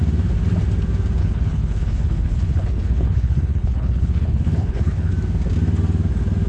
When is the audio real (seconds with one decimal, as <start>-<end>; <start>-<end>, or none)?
0.0-1.2; 5.1-6.5